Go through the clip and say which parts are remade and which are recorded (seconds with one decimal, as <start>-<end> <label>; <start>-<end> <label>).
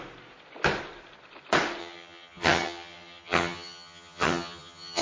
0.0-1.8 recorded; 1.8-5.0 remade